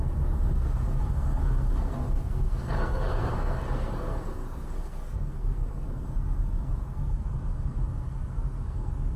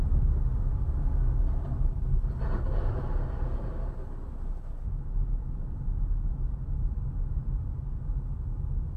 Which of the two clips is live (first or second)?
second